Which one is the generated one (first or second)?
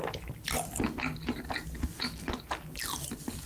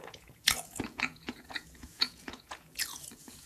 second